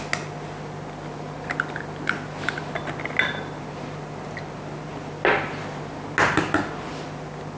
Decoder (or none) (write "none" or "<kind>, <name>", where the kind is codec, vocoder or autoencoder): none